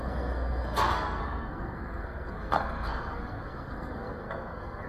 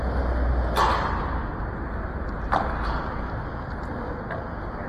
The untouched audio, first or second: second